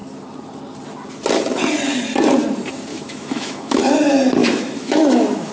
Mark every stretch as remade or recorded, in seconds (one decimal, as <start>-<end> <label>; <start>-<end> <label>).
0.0-2.9 recorded; 2.9-3.8 remade; 3.8-4.4 recorded; 4.4-5.5 remade